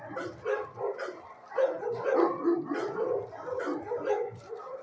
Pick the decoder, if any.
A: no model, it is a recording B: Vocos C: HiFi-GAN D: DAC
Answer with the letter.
A